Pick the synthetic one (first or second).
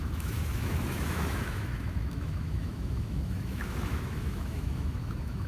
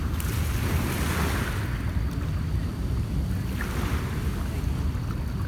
first